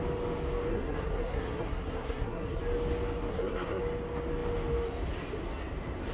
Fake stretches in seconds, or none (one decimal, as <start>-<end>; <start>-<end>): 0.7-2.6; 3.3-3.8